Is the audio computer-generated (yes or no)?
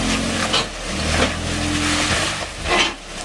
no